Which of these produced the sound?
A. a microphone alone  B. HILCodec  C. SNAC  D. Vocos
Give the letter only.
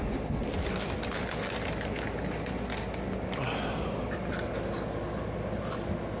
A